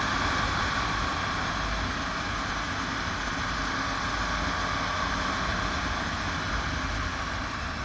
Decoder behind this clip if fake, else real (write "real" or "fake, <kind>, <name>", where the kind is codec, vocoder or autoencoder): real